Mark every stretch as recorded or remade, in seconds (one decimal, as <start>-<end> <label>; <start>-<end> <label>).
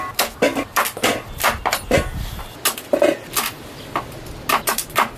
0.0-5.2 recorded